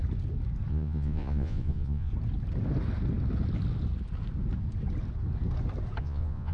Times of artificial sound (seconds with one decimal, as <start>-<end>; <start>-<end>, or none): 0.7-2.1; 6.0-6.5